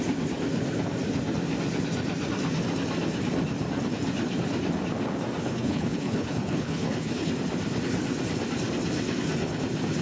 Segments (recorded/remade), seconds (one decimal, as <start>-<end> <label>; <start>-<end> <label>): 0.0-5.4 recorded; 5.4-7.3 remade; 7.3-10.0 recorded